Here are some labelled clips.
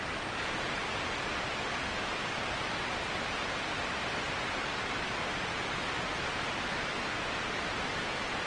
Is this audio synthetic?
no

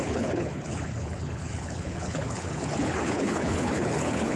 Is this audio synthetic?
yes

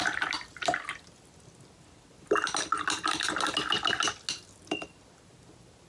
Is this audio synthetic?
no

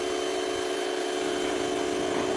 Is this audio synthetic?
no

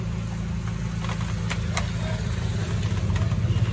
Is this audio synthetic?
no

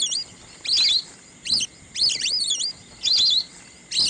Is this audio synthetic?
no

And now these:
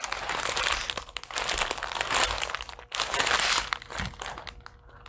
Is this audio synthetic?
no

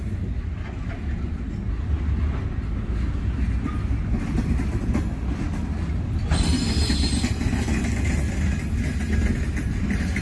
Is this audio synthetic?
no